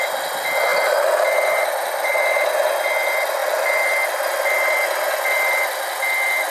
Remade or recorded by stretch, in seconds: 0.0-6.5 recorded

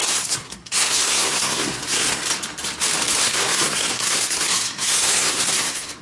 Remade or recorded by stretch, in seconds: 0.0-2.2 remade; 2.2-3.2 recorded; 3.2-6.0 remade

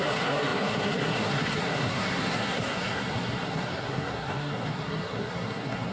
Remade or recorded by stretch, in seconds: 0.0-5.9 remade

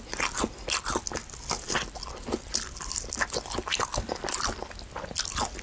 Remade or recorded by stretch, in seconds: 0.0-5.6 recorded

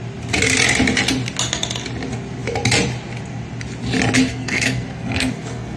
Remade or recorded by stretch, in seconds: 0.0-4.3 recorded; 4.3-5.8 remade

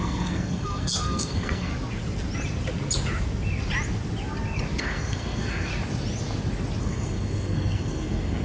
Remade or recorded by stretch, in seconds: 0.0-1.7 remade; 1.7-4.8 recorded; 4.8-5.7 remade; 5.7-6.8 recorded; 6.8-8.4 remade